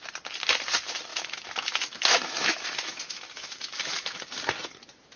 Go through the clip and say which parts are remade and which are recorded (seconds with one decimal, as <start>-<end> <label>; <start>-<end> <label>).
0.0-1.1 recorded; 1.1-4.2 remade; 4.2-5.2 recorded